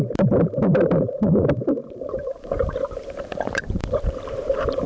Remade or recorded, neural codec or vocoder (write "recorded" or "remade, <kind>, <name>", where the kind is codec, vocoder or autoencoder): remade, vocoder, BigVGAN v2